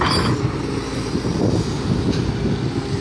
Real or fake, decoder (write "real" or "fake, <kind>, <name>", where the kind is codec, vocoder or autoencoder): real